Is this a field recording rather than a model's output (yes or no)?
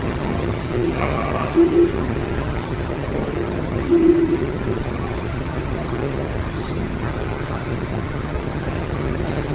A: no